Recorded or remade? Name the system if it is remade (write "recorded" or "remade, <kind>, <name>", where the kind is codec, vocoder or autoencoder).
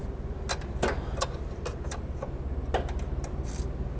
recorded